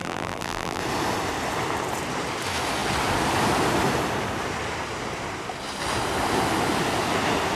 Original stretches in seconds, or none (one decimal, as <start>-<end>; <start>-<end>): 0.8-7.5